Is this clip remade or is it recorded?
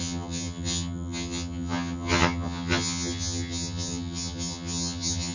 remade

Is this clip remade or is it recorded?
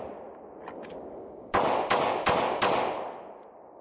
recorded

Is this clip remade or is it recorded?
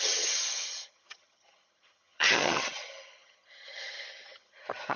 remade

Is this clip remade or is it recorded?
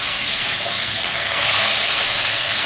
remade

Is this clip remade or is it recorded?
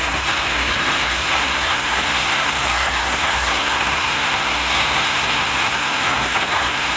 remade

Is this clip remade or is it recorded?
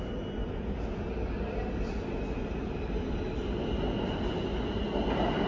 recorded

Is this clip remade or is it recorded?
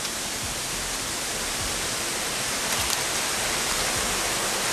recorded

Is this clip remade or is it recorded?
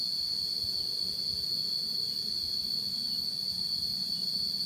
recorded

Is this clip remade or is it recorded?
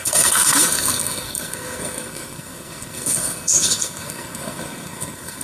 remade